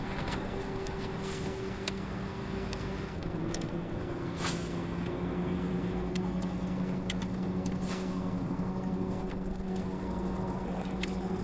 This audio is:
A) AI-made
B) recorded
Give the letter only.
A